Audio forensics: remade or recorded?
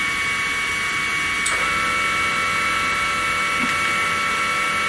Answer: recorded